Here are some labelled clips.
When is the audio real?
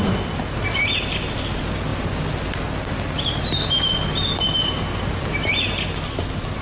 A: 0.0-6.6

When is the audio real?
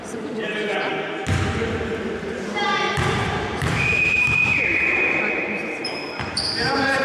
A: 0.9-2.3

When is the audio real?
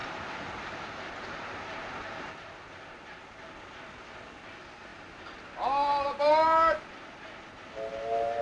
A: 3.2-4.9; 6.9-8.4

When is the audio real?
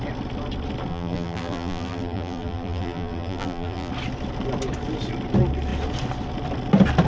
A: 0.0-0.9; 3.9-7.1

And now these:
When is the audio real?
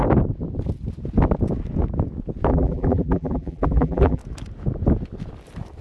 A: 0.0-2.5; 4.2-5.8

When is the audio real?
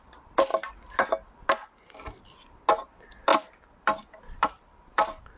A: 0.0-0.5; 1.4-3.3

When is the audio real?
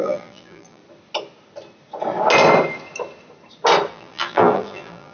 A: 0.8-3.9